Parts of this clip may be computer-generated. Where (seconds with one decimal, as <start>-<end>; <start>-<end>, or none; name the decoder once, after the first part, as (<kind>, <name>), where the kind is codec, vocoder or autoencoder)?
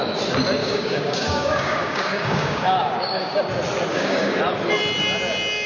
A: 0.6-3.4 (codec, DAC); 3.9-4.4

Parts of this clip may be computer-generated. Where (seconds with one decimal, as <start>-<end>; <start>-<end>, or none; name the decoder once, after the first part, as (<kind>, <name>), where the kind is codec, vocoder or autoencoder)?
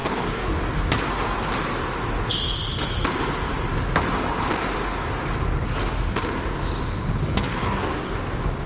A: 0.0-0.8 (codec, DAC); 7.5-8.1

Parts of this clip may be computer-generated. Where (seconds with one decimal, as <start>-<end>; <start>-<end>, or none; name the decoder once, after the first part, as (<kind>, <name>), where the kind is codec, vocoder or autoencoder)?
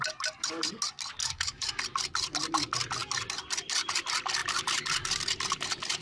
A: 1.2-1.8 (codec, DAC)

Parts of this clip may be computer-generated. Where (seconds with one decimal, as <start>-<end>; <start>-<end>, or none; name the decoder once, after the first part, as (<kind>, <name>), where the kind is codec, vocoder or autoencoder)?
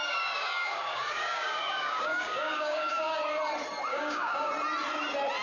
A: 0.0-3.2 (codec, DAC); 3.9-4.5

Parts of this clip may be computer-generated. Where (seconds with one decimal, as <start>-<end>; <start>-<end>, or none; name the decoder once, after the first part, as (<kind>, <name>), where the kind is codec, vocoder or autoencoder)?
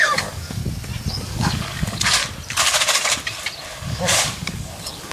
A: 0.0-0.6 (codec, DAC); 1.1-2.2; 3.7-5.1